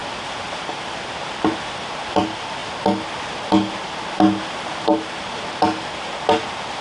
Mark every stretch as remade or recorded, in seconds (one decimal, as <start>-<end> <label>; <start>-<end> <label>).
0.0-6.8 recorded